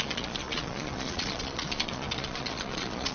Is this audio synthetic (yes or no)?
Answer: yes